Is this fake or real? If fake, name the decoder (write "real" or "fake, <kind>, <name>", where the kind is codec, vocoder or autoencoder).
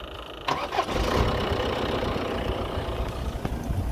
real